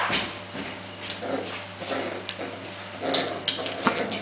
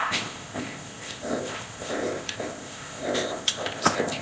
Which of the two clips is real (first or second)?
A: first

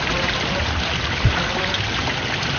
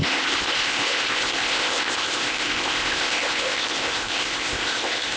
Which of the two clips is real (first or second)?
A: first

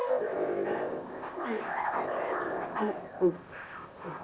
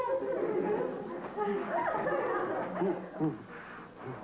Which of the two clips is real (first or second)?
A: second